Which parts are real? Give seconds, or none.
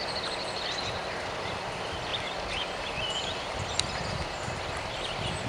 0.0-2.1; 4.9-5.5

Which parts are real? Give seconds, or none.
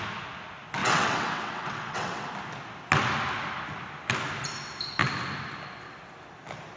0.0-0.8; 2.3-6.8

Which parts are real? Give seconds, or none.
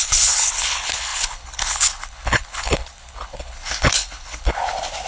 none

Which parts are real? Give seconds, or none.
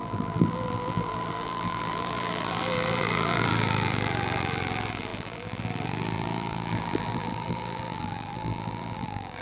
none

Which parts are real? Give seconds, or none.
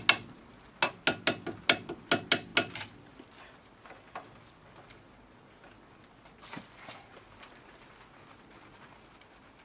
0.0-9.6